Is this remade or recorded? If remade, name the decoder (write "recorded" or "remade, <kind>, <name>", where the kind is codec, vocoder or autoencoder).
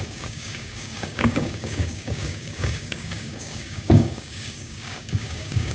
remade, codec, DAC